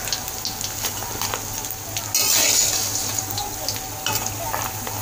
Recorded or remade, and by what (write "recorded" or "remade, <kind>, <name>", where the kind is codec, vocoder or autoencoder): recorded